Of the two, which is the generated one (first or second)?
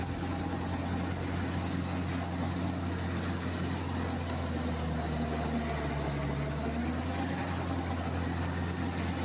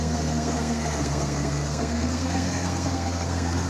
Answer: second